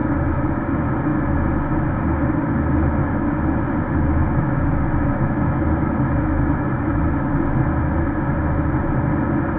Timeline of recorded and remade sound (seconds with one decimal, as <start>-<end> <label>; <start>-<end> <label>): 0.0-0.6 remade; 0.6-3.0 recorded; 3.0-7.0 remade; 7.0-9.6 recorded